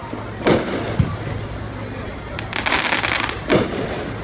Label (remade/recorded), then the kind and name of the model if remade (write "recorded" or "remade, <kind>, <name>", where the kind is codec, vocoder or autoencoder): recorded